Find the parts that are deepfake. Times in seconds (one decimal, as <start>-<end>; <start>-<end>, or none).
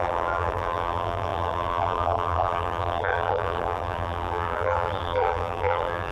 0.0-6.1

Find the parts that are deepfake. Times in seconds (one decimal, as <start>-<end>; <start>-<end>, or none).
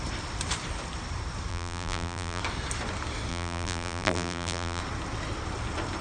1.5-2.4; 3.3-4.8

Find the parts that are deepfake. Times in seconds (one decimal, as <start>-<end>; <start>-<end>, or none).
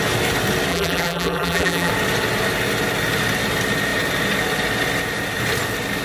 0.7-1.9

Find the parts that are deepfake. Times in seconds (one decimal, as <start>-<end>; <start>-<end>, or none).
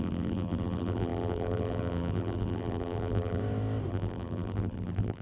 0.0-3.4; 3.9-5.2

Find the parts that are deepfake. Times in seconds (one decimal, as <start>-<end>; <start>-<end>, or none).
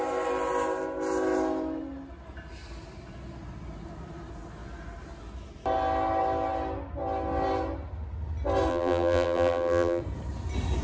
8.7-10.0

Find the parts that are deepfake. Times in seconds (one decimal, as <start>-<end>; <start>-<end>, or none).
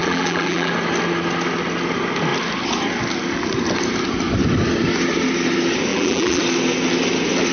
0.0-0.7; 5.9-6.4